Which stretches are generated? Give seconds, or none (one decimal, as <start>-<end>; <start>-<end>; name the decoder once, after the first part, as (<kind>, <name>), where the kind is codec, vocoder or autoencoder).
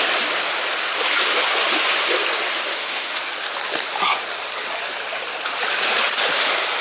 2.7-3.2 (autoencoder, DAC-VAE)